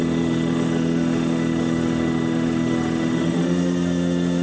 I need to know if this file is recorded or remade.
remade